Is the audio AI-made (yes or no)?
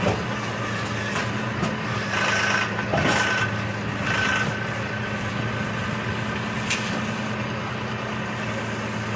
no